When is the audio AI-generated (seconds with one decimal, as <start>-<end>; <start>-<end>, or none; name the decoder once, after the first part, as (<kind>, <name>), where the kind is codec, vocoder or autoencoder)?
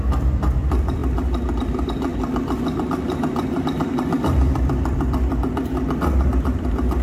0.0-1.0 (vocoder, BigVGAN v2); 1.5-7.0